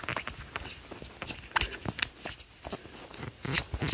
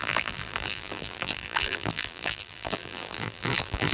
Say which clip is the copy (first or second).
second